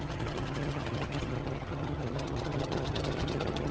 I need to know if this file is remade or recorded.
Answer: remade